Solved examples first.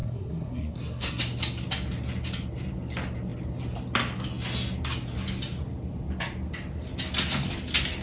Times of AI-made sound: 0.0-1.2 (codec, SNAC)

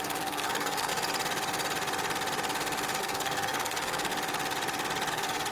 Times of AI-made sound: 0.0-0.9 (codec, SNAC); 3.0-4.1; 5.1-5.5

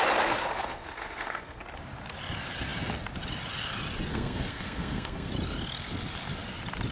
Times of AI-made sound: 0.4-1.6 (codec, SNAC); 4.1-5.3

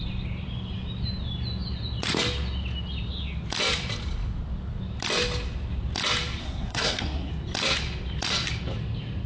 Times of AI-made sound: 6.4-7.3 (codec, SNAC)

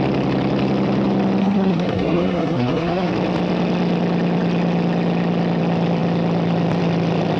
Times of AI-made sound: 1.4-3.1 (codec, SNAC)